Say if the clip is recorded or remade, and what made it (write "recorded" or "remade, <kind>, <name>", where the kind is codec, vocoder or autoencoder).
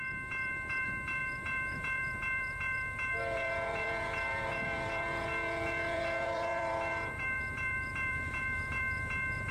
remade, vocoder, BigVGAN v2